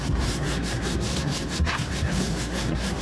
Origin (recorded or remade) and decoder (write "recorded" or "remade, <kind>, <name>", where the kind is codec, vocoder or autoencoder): remade, codec, SNAC